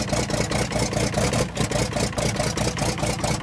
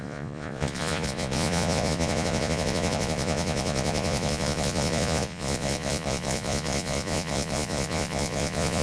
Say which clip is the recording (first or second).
first